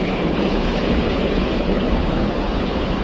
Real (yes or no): no